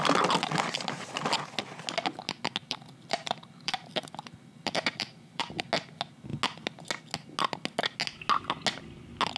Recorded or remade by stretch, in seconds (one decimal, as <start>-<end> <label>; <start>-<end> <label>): 0.0-2.6 recorded; 2.6-5.6 remade; 5.6-9.4 recorded